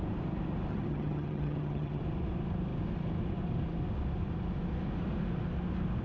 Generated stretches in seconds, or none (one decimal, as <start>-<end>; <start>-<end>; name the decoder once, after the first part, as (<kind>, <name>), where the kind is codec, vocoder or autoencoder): 0.7-2.0 (vocoder, HiFi-GAN)